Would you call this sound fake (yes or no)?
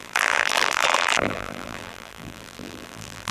yes